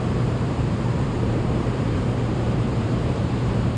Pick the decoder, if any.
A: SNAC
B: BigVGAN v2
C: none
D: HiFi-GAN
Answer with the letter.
B